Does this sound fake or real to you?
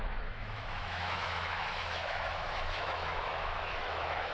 fake